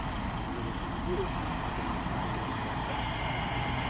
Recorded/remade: recorded